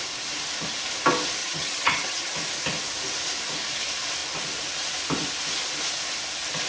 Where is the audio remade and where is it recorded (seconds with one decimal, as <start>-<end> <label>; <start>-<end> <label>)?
0.0-1.4 recorded; 1.4-2.3 remade; 2.3-6.7 recorded